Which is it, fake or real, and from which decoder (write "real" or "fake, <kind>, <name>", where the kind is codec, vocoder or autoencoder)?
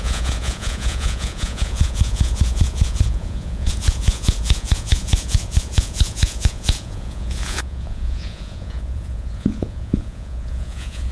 fake, vocoder, Vocos